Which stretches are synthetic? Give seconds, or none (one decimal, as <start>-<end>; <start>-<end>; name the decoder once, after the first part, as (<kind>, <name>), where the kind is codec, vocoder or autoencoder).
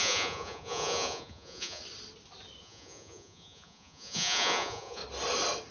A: 0.0-1.8 (vocoder, Vocos); 2.6-5.0